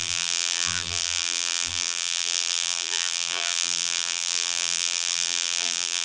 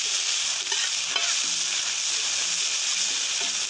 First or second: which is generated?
first